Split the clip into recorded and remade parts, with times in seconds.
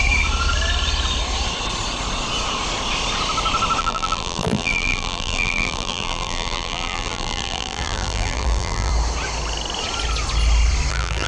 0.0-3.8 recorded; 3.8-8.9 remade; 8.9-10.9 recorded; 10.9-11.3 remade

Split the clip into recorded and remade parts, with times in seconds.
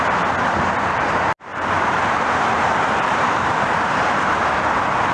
0.0-1.5 recorded; 1.5-4.6 remade; 4.6-5.1 recorded